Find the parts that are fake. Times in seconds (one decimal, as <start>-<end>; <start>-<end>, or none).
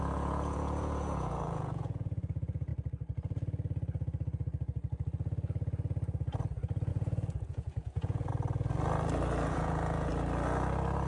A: 0.0-2.7; 6.9-8.3; 9.5-10.1